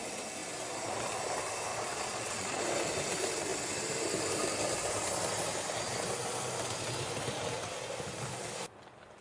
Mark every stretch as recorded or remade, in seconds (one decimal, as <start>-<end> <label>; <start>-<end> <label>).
0.0-1.7 recorded; 1.7-2.6 remade; 2.6-9.2 recorded